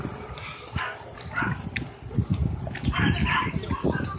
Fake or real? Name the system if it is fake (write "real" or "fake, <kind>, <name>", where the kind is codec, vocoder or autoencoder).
fake, vocoder, BigVGAN v2